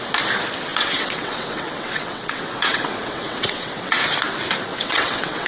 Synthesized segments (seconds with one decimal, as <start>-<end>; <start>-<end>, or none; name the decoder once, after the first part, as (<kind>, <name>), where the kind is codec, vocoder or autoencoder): 0.7-4.0 (vocoder, WaveNeXt); 4.7-5.5